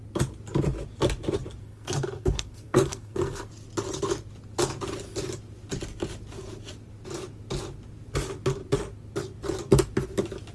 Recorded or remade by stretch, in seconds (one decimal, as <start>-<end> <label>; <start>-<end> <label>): 0.0-1.6 recorded; 1.6-3.5 remade; 3.5-10.5 recorded